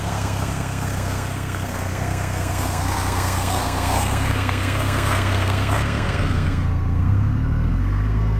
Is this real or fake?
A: fake